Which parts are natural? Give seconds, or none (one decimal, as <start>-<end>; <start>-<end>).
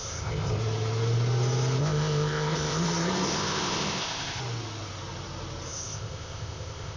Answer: 0.6-1.8; 4.4-5.7